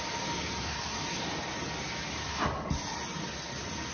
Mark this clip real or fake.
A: real